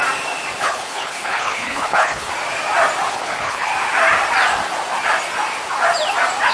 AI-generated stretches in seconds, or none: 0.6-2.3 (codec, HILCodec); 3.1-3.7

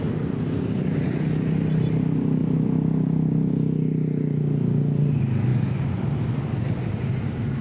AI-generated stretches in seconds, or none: none